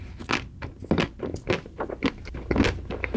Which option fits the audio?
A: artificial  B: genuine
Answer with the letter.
B